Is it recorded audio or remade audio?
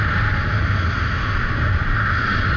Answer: recorded